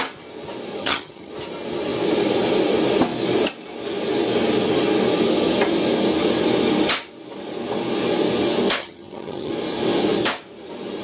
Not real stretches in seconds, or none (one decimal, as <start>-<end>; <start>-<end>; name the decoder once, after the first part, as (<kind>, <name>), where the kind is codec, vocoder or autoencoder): 0.8-1.3 (vocoder, HiFi-GAN); 8.8-9.5